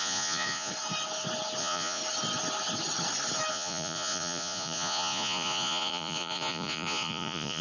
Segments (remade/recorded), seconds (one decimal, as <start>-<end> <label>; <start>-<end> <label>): 0.0-0.7 remade; 0.7-1.6 recorded; 1.6-2.0 remade; 2.0-3.5 recorded; 3.5-7.6 remade